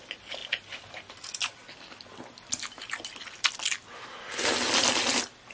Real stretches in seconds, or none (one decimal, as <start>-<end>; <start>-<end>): 1.6-4.9